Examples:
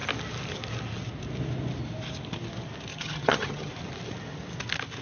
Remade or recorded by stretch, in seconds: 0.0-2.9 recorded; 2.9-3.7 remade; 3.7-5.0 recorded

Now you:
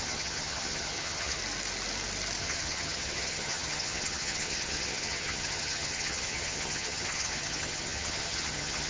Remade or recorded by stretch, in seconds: 0.0-1.4 remade; 1.4-2.4 recorded; 2.4-8.9 remade

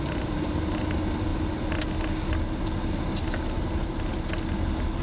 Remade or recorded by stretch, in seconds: 0.0-5.0 recorded

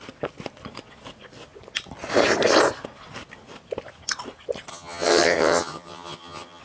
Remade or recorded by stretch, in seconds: 0.0-4.7 recorded; 4.7-6.6 remade

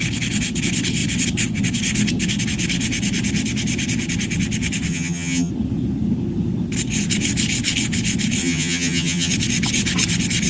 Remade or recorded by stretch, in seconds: 0.0-4.9 recorded; 4.9-5.5 remade; 5.5-8.4 recorded; 8.4-9.3 remade; 9.3-10.5 recorded